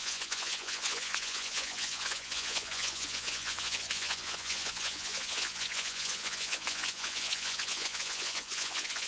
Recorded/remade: remade